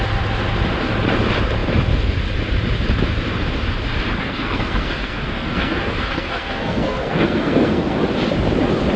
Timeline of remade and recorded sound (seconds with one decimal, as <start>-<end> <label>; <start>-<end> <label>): 0.0-4.2 recorded; 4.2-8.0 remade; 8.0-9.0 recorded